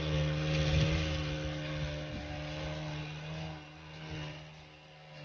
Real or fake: real